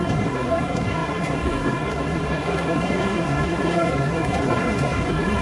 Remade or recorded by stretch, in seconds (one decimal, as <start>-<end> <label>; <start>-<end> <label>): 0.0-5.4 remade